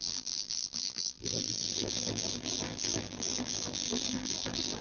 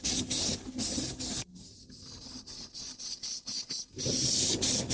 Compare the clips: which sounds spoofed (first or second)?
first